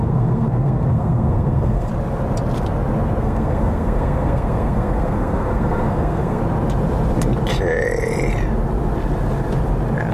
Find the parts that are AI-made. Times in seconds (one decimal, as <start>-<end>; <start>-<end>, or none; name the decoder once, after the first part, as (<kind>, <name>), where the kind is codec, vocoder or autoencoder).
0.0-1.9 (codec, SNAC); 3.2-6.4

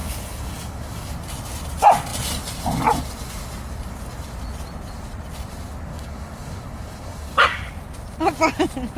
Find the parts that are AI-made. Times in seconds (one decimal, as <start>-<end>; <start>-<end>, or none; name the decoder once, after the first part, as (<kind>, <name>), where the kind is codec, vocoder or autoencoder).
0.0-1.1 (codec, DAC); 5.9-7.7

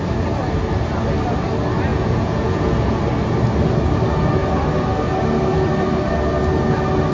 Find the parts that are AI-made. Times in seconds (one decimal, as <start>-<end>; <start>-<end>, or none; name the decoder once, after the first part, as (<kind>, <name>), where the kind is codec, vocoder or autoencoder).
1.9-3.0 (vocoder, Vocos)

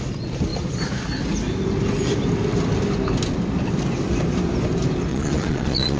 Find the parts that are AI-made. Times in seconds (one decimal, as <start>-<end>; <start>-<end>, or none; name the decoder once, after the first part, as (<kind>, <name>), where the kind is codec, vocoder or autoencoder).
5.1-6.0 (vocoder, Vocos)

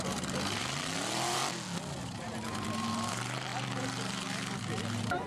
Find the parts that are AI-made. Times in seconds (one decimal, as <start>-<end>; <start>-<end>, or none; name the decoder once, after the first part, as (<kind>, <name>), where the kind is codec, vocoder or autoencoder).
0.0-1.4 (vocoder, BigVGAN v2); 2.0-5.3

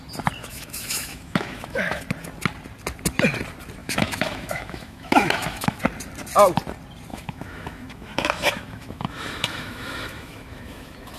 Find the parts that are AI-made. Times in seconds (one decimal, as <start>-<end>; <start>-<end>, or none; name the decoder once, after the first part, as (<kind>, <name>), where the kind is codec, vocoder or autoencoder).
0.4-2.0 (autoencoder, DAC-VAE); 3.8-5.8; 7.1-11.2

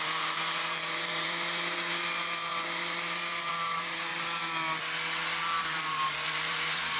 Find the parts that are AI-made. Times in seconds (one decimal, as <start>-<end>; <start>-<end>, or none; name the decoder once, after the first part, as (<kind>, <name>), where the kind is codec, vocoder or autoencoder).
0.0-4.1 (vocoder, BigVGAN v2); 5.6-7.0